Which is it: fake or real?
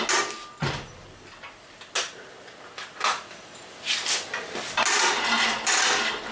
real